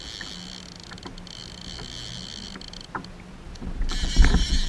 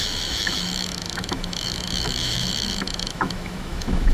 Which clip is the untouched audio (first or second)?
first